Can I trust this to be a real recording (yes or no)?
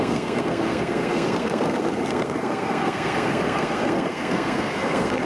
no